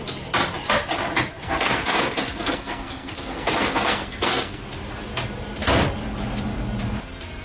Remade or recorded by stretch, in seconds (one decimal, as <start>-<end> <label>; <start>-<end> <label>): 0.0-1.4 recorded; 1.4-4.6 remade; 4.6-7.4 recorded